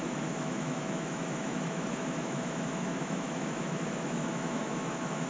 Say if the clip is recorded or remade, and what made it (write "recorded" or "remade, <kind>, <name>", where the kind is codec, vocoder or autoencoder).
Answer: remade, autoencoder, DAC-VAE